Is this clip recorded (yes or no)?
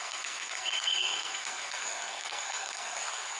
no